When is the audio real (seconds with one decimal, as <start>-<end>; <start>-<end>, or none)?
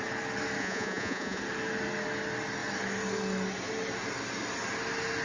0.0-0.6; 1.4-5.2